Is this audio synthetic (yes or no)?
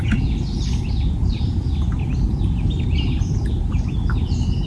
no